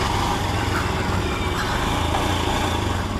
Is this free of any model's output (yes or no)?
yes